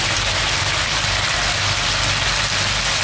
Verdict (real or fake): real